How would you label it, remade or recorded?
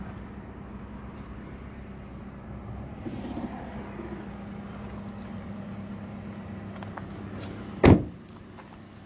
recorded